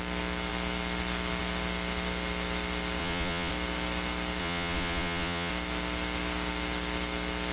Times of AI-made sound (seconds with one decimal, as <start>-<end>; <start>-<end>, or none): 3.0-3.5; 4.4-5.5

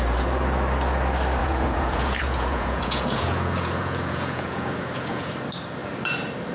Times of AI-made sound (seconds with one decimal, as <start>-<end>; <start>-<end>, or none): 1.4-5.3

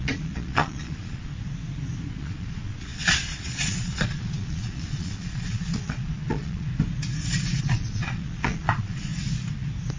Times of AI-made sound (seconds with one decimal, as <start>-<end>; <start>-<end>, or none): 0.0-1.3; 2.2-6.7; 7.6-9.1

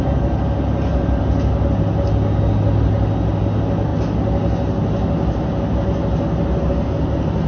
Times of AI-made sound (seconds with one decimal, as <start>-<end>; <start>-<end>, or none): none